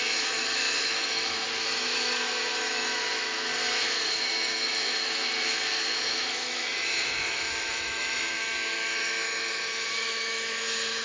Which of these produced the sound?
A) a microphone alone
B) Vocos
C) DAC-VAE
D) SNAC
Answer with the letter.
C